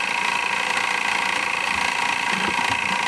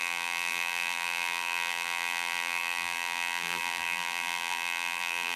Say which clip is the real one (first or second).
first